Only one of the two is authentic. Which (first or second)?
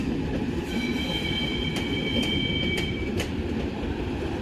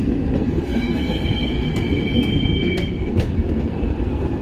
first